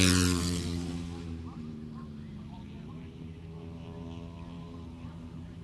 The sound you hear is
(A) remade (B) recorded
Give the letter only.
A